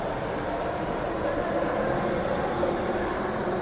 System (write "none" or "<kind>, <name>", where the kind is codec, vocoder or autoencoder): none